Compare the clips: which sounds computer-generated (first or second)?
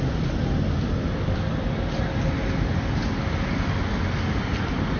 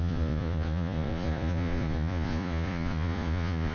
second